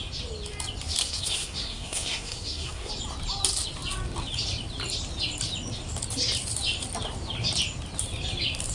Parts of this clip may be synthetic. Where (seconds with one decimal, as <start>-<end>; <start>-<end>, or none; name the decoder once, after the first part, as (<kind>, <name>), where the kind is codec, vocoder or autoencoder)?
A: 1.0-2.9 (codec, SNAC)